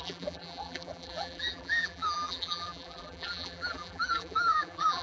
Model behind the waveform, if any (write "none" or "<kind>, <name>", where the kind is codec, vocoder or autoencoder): vocoder, BigVGAN v2